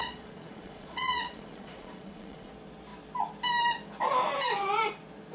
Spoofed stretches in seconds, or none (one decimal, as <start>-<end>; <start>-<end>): 0.0-2.5